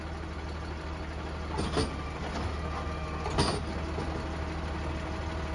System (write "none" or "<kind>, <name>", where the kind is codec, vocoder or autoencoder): none